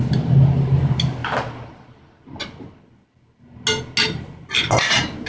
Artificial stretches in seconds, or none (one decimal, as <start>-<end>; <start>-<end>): none